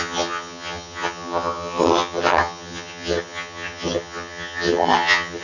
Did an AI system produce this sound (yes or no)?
yes